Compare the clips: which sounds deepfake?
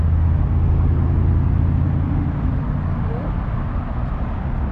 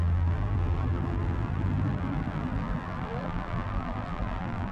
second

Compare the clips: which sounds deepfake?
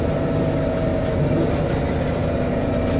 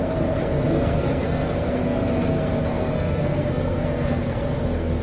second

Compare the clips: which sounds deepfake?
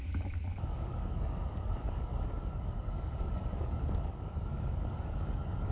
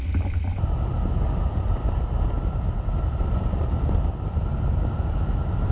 first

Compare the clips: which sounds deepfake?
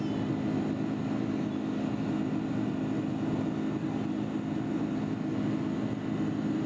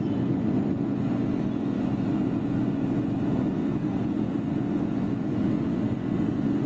second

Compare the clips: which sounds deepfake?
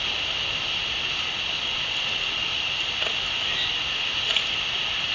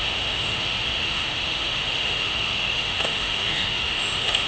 second